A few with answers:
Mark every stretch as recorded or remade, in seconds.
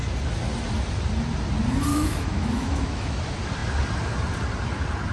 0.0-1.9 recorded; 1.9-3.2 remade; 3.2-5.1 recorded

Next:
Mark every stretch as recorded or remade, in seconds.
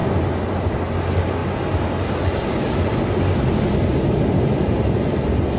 0.0-5.6 recorded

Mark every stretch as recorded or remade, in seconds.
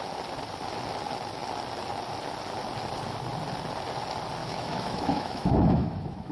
0.0-4.4 recorded; 4.4-6.3 remade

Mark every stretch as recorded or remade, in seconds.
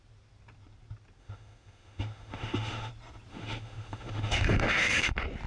0.0-1.2 recorded; 1.2-2.9 remade; 2.9-3.3 recorded; 3.3-5.1 remade; 5.1-5.5 recorded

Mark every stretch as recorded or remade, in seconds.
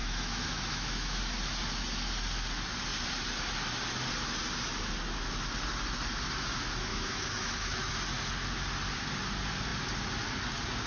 0.0-1.2 remade; 1.2-6.9 recorded; 6.9-7.9 remade; 7.9-10.9 recorded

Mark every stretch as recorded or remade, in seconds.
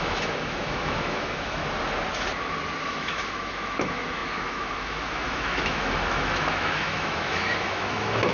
0.0-1.6 remade; 1.6-2.8 recorded; 2.8-8.3 remade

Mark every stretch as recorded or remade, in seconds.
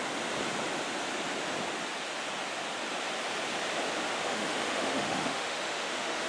0.0-4.1 recorded; 4.1-6.3 remade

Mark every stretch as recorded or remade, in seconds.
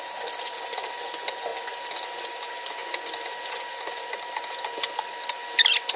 0.0-6.0 recorded